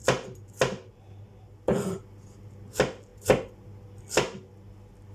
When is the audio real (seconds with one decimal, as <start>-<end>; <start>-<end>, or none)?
0.0-5.1